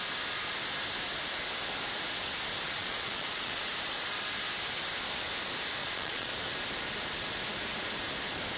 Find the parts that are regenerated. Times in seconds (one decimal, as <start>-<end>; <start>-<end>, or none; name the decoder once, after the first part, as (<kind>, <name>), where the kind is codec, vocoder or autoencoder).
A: 2.8-3.7 (vocoder, Vocos); 5.8-6.3